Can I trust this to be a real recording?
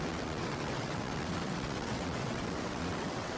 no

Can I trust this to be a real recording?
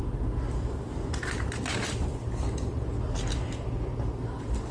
yes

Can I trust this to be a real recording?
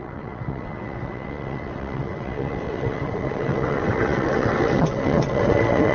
no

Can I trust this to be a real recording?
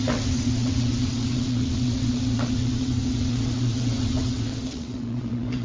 no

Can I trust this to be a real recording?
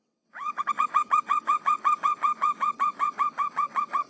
no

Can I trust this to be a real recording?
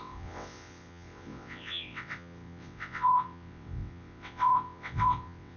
no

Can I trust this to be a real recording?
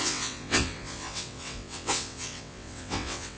no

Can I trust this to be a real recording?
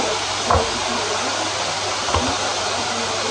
yes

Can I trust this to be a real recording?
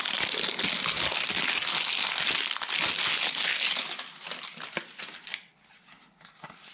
yes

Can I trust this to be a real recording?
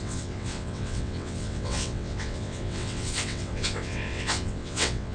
no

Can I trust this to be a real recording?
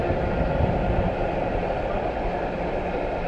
yes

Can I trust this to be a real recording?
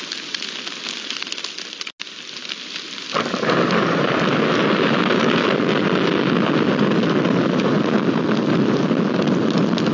yes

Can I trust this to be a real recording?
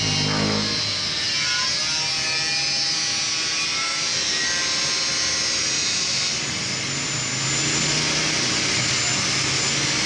yes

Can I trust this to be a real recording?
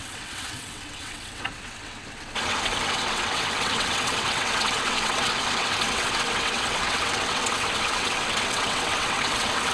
no